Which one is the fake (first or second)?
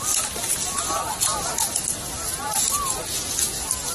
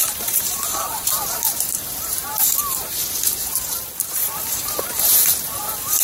second